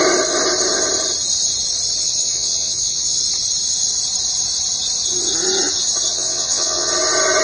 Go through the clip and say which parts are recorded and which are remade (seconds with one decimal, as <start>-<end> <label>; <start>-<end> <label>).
0.0-2.0 recorded; 2.0-3.2 remade; 3.2-6.1 recorded; 6.1-6.9 remade; 6.9-7.4 recorded